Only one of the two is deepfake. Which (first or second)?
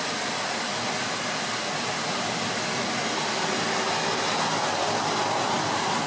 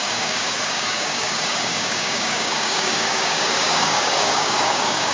second